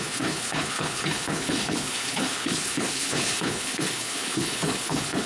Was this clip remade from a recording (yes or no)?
yes